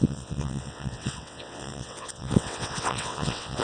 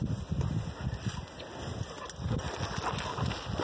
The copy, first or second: first